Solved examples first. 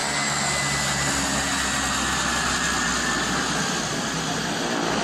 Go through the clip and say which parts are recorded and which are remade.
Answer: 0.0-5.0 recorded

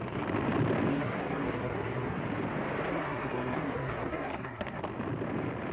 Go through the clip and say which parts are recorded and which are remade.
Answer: 0.0-0.9 recorded; 0.9-2.2 remade; 2.2-2.9 recorded; 2.9-4.8 remade; 4.8-5.7 recorded

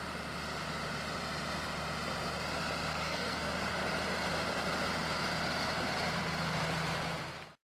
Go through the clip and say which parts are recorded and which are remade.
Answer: 0.0-2.9 recorded; 2.9-3.5 remade; 3.5-7.6 recorded

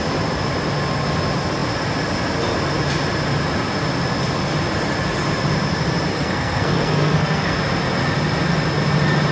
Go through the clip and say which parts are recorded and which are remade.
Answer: 0.0-6.1 recorded; 6.1-7.6 remade; 7.6-9.3 recorded

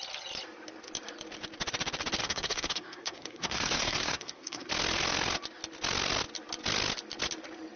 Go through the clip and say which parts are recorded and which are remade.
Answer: 0.0-2.2 recorded; 2.2-4.7 remade; 4.7-7.8 recorded

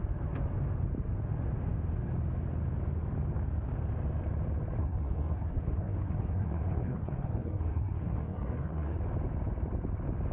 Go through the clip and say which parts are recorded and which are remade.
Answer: 0.0-4.8 recorded; 4.8-9.0 remade; 9.0-10.3 recorded